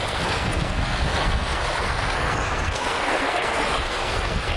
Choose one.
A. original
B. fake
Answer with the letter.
B